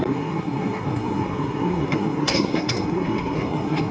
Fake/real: fake